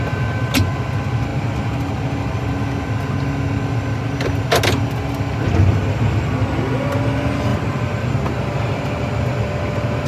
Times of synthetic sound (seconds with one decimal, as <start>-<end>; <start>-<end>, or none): 5.8-6.3; 7.5-8.1